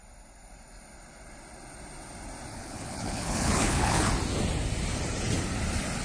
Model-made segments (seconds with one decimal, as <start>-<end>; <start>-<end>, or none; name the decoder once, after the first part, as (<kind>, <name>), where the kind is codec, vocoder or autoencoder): 2.5-4.1 (codec, HILCodec)